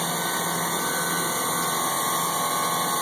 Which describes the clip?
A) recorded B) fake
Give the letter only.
A